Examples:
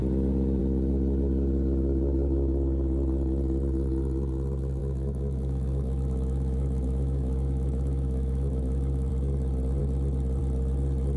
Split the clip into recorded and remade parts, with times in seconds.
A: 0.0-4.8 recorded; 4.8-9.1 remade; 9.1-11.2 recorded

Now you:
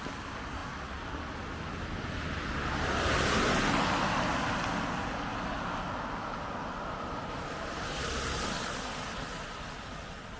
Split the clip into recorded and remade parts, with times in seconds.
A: 0.0-10.4 recorded

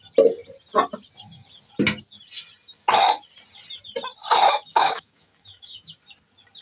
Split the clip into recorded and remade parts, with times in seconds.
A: 0.0-4.5 recorded; 4.5-5.9 remade; 5.9-6.6 recorded

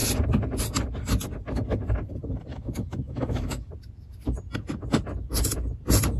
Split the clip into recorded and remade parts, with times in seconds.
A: 0.0-2.5 recorded; 2.5-3.7 remade; 3.7-6.2 recorded